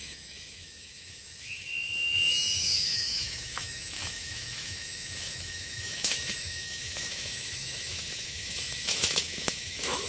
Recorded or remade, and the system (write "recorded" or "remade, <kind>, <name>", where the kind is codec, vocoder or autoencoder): remade, autoencoder, DAC-VAE